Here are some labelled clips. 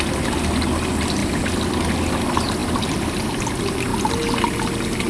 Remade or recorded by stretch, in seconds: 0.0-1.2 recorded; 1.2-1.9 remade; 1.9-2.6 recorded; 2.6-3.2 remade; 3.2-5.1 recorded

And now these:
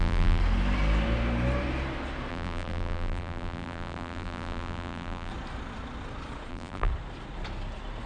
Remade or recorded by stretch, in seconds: 0.0-0.4 remade; 0.4-2.3 recorded; 2.3-5.3 remade; 5.3-6.5 recorded; 6.5-6.9 remade; 6.9-8.1 recorded

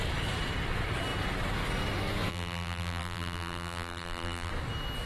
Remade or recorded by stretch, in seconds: 0.0-2.3 recorded; 2.3-4.5 remade; 4.5-5.1 recorded

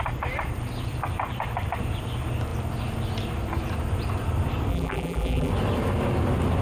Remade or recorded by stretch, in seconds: 0.0-4.7 recorded; 4.7-5.5 remade; 5.5-6.6 recorded

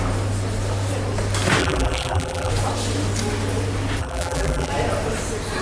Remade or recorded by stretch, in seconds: 0.0-1.6 recorded; 1.6-2.5 remade; 2.5-4.0 recorded; 4.0-4.7 remade; 4.7-5.6 recorded

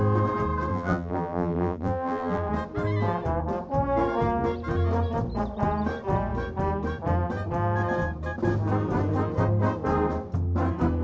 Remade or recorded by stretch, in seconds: 0.0-0.7 recorded; 0.7-2.5 remade; 2.5-11.0 recorded